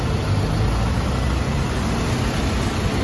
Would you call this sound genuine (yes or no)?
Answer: yes